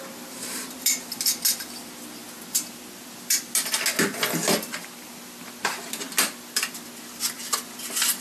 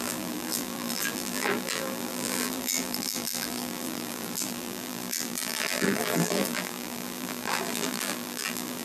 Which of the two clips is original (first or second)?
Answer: first